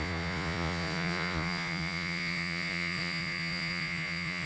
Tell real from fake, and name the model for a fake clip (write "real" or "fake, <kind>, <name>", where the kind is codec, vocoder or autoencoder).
fake, vocoder, Vocos